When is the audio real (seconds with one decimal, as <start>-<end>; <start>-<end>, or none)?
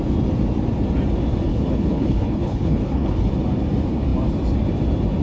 0.0-1.5; 3.3-5.2